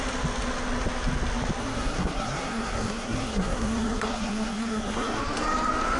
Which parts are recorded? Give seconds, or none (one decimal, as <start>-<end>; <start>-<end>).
0.0-1.6; 5.2-6.0